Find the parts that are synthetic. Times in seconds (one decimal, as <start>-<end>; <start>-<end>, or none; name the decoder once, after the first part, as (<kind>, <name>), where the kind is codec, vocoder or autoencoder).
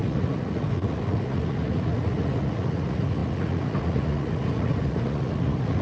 0.0-5.8 (vocoder, Vocos)